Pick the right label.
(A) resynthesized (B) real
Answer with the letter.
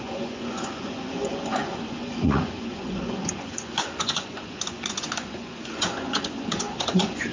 A